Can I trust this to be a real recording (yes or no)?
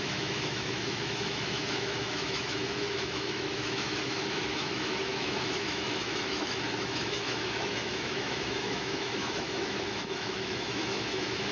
no